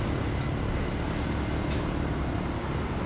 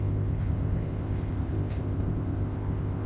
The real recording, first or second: first